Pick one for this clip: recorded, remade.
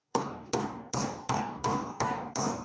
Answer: remade